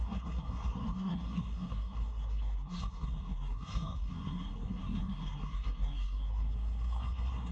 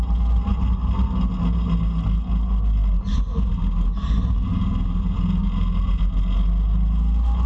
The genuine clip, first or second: second